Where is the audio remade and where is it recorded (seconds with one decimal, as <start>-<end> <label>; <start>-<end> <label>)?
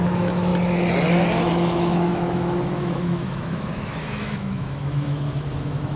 0.0-0.5 remade; 0.5-1.5 recorded; 1.5-6.0 remade